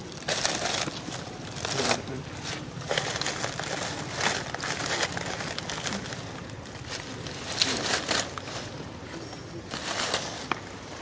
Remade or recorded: recorded